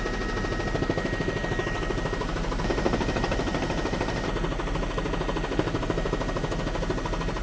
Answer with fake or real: real